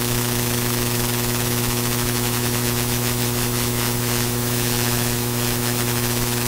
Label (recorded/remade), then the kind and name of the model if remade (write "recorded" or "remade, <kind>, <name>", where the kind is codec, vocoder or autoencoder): remade, autoencoder, DAC-VAE